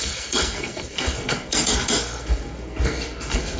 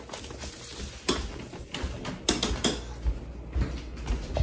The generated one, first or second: first